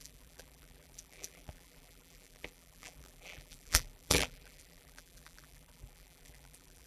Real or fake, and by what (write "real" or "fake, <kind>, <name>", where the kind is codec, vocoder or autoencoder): fake, vocoder, BigVGAN v2